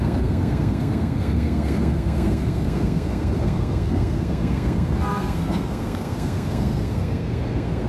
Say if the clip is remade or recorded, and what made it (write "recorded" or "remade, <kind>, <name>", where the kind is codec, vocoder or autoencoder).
remade, codec, SNAC